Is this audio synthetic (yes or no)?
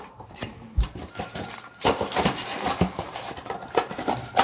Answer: yes